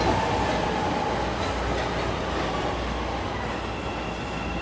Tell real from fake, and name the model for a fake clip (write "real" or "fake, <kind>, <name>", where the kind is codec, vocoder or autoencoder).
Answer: real